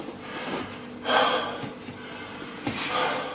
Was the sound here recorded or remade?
recorded